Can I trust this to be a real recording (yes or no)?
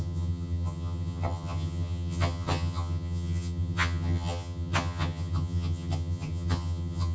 no